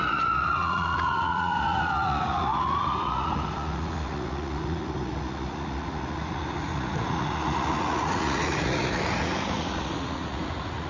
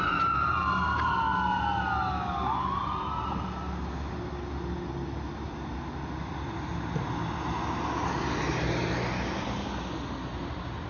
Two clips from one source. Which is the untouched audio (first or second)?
second